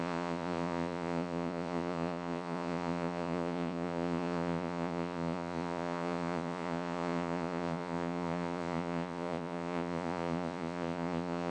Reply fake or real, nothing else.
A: fake